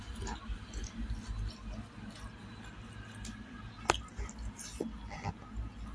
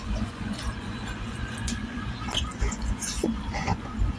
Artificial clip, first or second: second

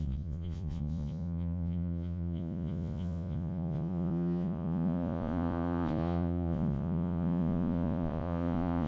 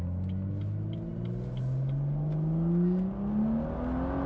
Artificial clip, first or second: first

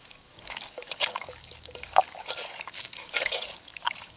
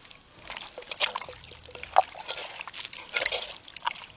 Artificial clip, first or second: first